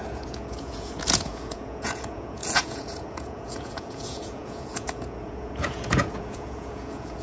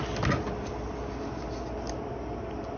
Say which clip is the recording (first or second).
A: second